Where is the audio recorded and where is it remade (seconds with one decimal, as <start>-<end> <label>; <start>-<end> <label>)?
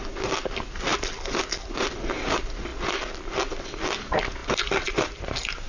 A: 0.0-0.9 recorded; 0.9-1.4 remade; 1.4-4.4 recorded; 4.4-4.9 remade; 4.9-5.7 recorded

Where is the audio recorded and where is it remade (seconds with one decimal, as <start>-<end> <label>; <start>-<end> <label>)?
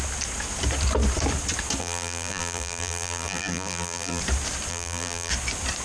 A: 0.0-1.8 recorded; 1.8-4.2 remade; 4.2-4.7 recorded; 4.7-5.3 remade; 5.3-5.8 recorded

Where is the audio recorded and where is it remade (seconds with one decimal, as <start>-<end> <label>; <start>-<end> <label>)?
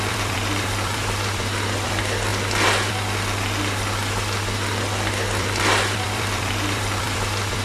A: 0.0-2.3 remade; 2.3-5.4 recorded; 5.4-7.6 remade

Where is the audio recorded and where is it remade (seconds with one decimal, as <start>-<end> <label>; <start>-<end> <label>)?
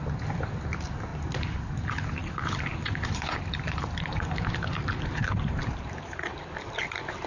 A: 0.0-1.1 recorded; 1.1-1.6 remade; 1.6-2.2 recorded; 2.2-6.4 remade; 6.4-7.3 recorded